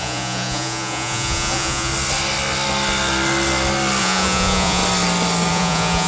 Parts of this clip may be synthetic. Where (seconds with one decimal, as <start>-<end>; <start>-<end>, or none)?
0.0-1.9; 4.0-4.8; 5.5-6.1